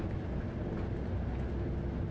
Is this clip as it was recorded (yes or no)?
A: yes